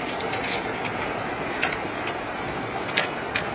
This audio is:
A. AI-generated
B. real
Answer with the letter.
B